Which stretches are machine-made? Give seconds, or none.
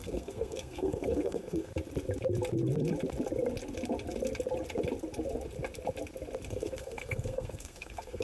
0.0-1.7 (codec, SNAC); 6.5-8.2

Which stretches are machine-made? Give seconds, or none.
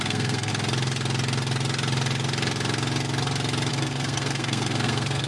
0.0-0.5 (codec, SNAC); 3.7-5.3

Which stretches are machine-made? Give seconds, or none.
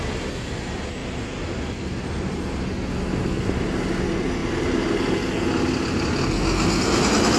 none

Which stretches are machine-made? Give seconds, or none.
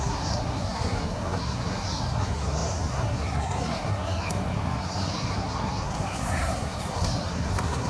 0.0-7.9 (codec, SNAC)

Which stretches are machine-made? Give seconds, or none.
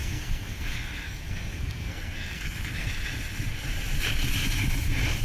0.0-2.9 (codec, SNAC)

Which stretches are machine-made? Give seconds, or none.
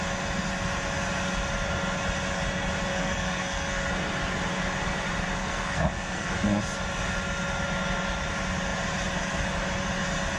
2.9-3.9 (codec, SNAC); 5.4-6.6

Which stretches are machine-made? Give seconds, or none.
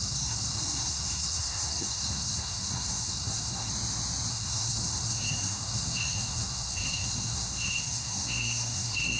0.0-3.7 (codec, SNAC); 4.3-9.2